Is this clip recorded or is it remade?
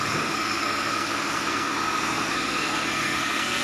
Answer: remade